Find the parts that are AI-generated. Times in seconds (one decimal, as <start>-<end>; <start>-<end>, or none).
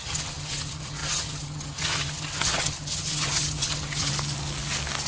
0.0-4.1